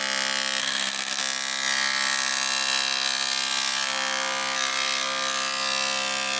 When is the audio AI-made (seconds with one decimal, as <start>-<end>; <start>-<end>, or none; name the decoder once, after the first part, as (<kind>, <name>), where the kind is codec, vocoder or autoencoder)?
0.6-1.2 (codec, SNAC)